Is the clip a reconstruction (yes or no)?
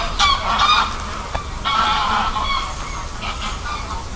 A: no